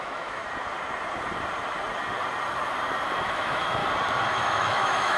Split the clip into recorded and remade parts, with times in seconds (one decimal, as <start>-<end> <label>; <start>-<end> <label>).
0.0-0.4 remade; 0.4-3.2 recorded; 3.2-3.8 remade; 3.8-4.3 recorded; 4.3-5.2 remade